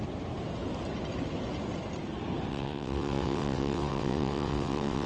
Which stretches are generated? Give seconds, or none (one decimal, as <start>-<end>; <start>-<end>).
2.5-5.1